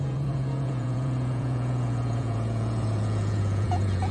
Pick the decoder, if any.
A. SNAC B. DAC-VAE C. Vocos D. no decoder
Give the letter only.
C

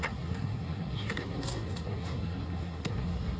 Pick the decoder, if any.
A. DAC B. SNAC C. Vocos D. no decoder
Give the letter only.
B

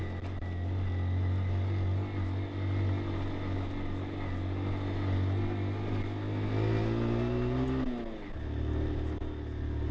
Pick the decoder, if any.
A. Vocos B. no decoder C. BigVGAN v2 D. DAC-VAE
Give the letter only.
B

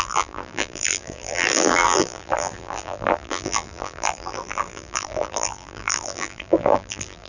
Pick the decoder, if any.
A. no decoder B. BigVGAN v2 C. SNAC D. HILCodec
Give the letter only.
B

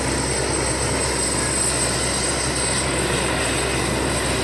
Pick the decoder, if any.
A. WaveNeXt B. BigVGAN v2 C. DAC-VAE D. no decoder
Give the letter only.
D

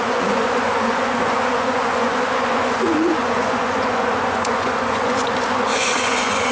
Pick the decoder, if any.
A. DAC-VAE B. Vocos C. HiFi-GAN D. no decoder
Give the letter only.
B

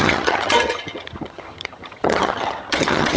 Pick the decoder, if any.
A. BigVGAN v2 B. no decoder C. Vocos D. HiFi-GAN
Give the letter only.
D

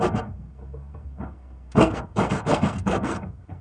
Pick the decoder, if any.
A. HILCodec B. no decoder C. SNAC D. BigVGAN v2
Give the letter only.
C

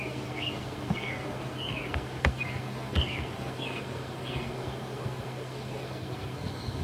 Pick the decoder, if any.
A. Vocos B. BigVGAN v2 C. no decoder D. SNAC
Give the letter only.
D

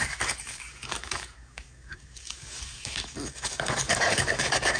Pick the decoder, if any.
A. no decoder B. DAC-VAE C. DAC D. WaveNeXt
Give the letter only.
C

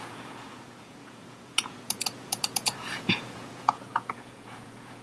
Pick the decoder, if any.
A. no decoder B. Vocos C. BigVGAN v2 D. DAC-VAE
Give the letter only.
B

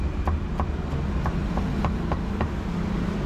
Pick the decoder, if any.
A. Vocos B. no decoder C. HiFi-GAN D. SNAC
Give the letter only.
B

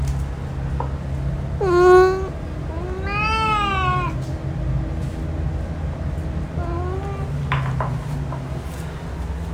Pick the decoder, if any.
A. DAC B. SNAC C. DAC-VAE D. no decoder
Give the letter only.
D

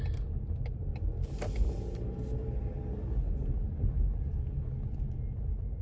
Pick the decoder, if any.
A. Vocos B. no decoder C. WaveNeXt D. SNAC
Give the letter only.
B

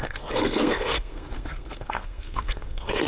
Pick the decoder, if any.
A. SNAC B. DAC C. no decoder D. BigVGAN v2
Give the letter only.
A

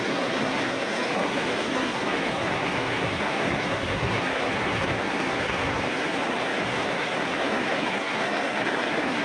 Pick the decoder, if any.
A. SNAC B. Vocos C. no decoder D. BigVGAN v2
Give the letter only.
A